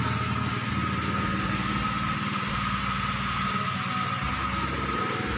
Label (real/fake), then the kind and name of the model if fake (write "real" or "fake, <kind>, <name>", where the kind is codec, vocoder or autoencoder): real